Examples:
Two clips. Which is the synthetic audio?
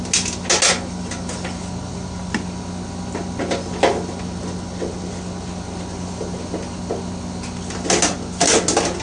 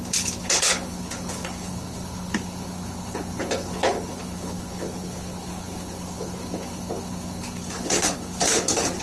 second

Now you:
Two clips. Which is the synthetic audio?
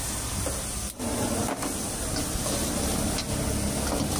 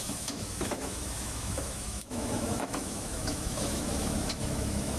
second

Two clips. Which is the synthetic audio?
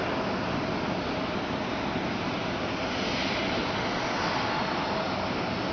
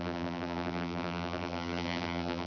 second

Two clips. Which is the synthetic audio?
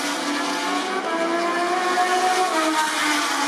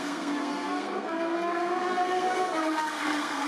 second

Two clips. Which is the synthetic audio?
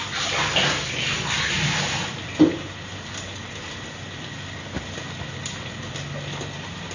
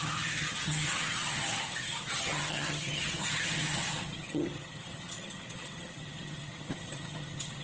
second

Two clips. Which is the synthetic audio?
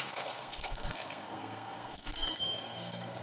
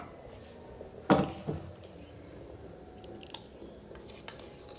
first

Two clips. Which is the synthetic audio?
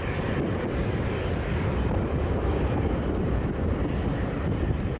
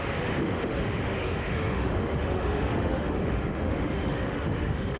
second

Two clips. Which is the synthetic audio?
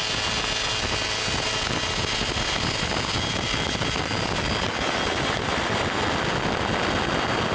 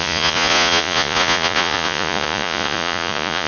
second